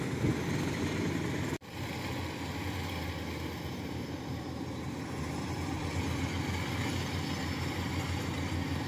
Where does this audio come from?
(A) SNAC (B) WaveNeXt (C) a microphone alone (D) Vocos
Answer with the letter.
C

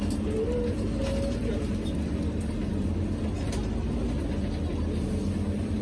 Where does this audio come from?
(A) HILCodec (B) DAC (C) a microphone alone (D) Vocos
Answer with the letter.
C